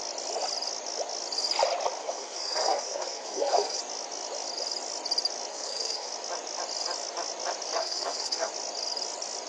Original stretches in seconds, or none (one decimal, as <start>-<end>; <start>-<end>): 0.0-2.0; 3.8-5.5; 6.1-7.8; 8.5-9.5